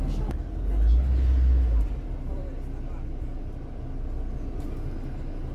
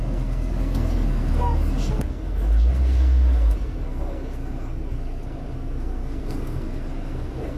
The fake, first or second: second